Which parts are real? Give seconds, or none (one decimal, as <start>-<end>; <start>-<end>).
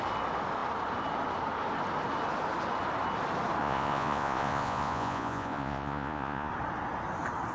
0.0-3.6; 6.5-7.5